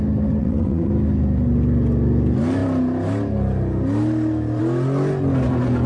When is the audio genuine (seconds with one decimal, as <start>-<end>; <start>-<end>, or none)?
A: 0.0-0.4; 0.9-5.9